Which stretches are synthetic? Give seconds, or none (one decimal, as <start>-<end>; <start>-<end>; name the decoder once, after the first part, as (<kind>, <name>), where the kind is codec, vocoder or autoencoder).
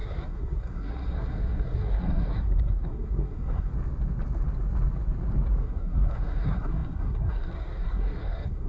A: 0.0-3.7 (codec, SNAC); 5.6-8.7